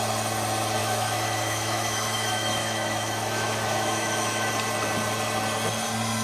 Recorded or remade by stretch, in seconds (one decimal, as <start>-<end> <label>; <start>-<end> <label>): 0.0-0.8 recorded; 0.8-4.5 remade; 4.5-6.2 recorded